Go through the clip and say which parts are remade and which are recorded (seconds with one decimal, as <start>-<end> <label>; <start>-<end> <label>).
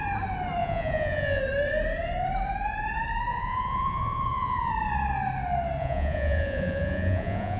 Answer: 0.0-0.6 recorded; 0.6-1.4 remade; 1.4-3.3 recorded; 3.3-4.7 remade; 4.7-5.8 recorded; 5.8-7.6 remade